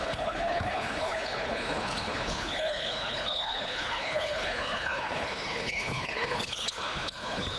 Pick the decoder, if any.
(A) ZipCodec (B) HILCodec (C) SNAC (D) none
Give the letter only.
B